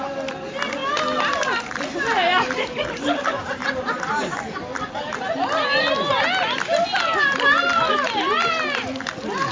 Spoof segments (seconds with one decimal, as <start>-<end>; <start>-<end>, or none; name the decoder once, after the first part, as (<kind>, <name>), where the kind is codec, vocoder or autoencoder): none